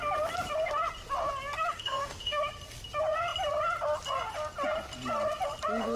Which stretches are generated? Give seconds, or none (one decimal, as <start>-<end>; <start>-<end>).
1.7-2.4